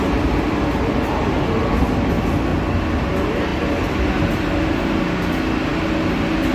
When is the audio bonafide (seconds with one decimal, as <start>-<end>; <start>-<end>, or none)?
0.0-6.5